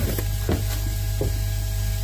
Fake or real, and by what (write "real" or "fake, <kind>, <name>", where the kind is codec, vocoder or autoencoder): real